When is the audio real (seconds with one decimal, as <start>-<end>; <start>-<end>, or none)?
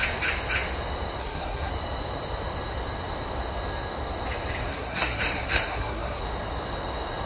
0.0-1.2; 1.7-4.7; 6.2-7.3